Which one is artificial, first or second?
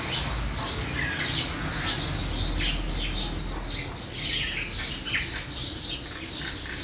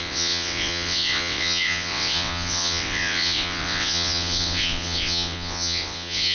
second